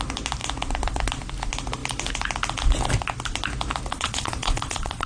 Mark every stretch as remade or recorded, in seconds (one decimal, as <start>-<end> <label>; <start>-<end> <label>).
0.0-3.9 recorded; 3.9-5.1 remade

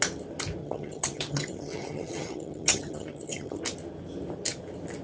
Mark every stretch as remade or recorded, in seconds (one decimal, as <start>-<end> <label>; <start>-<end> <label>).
0.0-0.6 recorded; 0.6-3.6 remade; 3.6-5.0 recorded

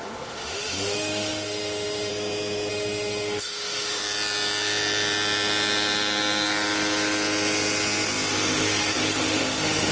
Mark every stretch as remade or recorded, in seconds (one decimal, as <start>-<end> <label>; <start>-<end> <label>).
0.0-2.1 remade; 2.1-2.7 recorded; 2.7-4.0 remade; 4.0-8.3 recorded; 8.3-9.9 remade

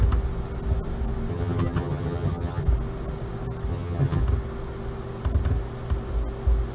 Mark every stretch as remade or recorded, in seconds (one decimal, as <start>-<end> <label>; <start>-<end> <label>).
0.0-1.3 recorded; 1.3-2.6 remade; 2.6-3.7 recorded; 3.7-4.2 remade; 4.2-6.7 recorded